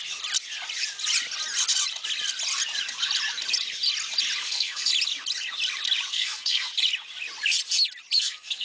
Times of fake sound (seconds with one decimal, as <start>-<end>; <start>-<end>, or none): 4.4-4.9; 6.1-6.7; 8.2-8.6